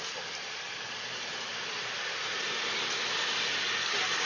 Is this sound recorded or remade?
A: remade